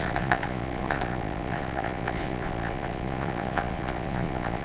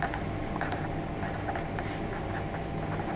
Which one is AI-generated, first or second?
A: first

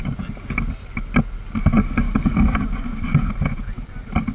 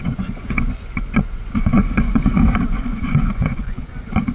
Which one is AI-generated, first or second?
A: second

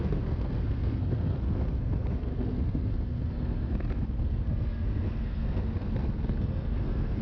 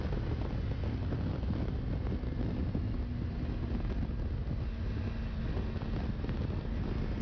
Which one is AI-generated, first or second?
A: first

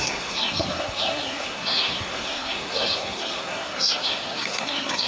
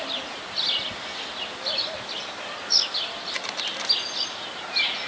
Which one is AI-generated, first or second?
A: first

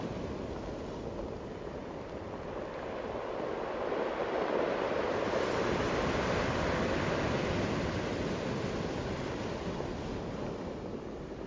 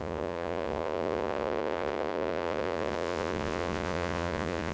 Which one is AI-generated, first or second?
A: second